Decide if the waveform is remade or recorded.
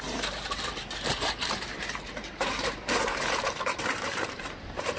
remade